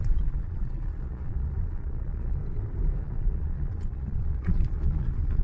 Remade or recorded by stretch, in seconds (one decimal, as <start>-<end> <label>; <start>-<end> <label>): 0.0-2.4 remade; 2.4-3.0 recorded; 3.0-5.4 remade

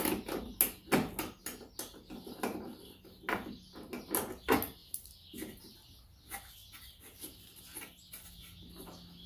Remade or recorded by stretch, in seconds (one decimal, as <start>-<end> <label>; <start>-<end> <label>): 0.0-9.3 recorded

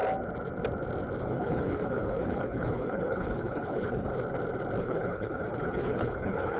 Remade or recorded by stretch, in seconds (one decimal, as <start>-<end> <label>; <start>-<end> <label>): 0.0-1.2 recorded; 1.2-4.1 remade; 4.1-4.8 recorded; 4.8-6.6 remade